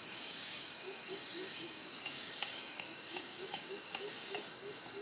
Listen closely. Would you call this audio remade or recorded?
remade